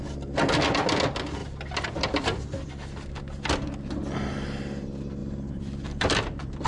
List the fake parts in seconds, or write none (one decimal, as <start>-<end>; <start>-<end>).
1.4-2.7; 5.2-6.7